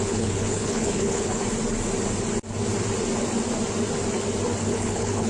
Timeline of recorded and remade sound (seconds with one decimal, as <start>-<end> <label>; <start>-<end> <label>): 0.0-1.4 remade; 1.4-4.6 recorded; 4.6-5.3 remade